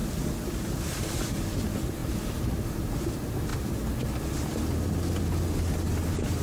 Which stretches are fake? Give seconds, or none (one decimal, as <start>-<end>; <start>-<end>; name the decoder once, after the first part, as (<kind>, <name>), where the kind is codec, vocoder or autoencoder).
none